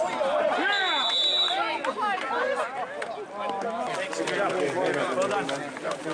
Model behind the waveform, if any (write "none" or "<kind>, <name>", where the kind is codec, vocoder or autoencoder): none